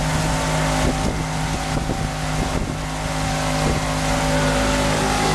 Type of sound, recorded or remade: recorded